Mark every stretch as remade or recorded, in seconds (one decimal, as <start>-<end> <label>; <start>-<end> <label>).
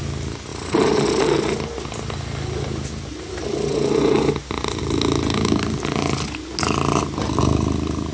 0.0-8.1 recorded